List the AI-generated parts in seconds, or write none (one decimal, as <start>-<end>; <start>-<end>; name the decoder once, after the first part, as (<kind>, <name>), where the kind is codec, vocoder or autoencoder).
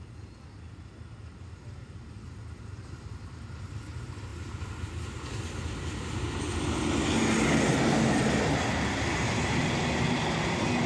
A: 1.3-3.7 (vocoder, BigVGAN v2); 9.1-9.8